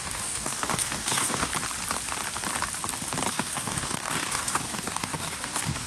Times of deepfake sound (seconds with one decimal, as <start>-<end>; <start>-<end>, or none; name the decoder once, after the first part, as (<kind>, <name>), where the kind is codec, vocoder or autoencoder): 0.0-1.5 (codec, DAC); 3.3-5.9